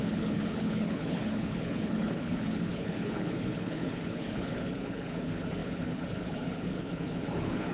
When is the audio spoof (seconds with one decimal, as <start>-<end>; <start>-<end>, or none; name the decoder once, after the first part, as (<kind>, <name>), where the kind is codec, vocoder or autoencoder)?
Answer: 0.0-7.7 (codec, HILCodec)